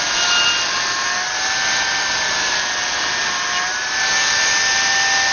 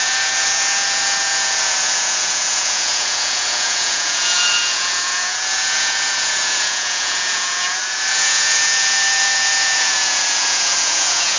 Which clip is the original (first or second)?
first